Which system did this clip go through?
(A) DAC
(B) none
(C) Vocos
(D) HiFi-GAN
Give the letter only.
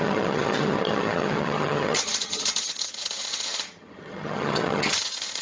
D